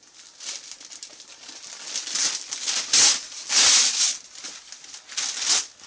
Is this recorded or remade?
recorded